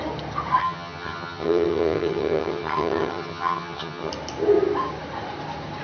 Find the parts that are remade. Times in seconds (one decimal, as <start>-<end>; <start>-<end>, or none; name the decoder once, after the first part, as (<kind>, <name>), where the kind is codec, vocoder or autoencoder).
0.6-4.1 (vocoder, HiFi-GAN)